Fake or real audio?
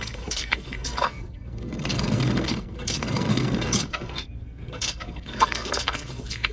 fake